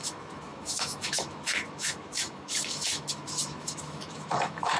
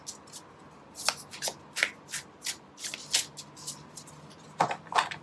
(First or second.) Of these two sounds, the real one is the second